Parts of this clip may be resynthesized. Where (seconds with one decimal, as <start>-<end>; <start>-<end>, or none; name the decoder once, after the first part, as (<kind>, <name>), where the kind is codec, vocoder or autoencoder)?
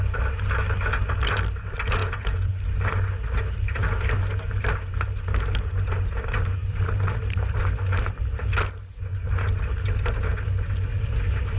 2.0-2.5 (vocoder, Vocos)